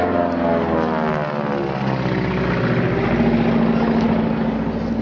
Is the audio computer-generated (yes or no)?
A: no